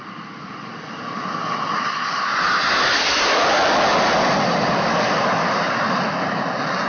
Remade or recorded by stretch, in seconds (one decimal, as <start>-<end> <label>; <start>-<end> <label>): 0.0-6.9 recorded